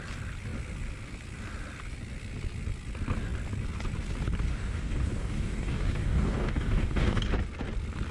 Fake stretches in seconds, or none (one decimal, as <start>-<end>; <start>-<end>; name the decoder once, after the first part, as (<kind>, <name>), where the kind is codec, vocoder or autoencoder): 4.5-7.2 (codec, DAC)